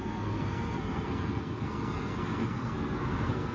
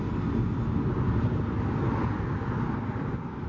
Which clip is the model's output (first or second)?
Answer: first